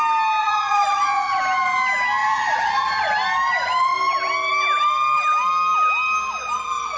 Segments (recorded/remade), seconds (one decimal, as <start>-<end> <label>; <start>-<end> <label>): 0.0-0.4 recorded; 0.4-1.4 remade; 1.4-2.2 recorded; 2.2-3.1 remade; 3.1-7.0 recorded